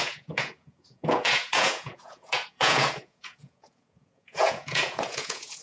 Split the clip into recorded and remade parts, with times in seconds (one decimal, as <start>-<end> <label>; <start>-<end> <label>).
0.0-5.6 remade